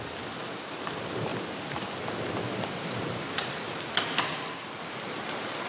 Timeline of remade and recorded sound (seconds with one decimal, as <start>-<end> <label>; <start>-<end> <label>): 0.0-1.3 recorded; 1.3-4.7 remade; 4.7-5.7 recorded